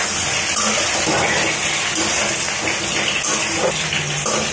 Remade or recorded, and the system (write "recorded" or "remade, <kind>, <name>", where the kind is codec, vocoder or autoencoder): recorded